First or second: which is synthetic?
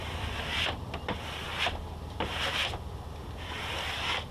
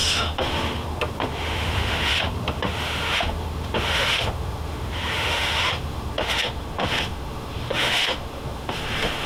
second